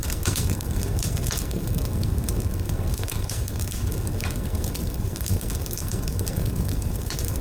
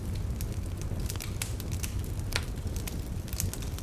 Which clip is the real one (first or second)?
second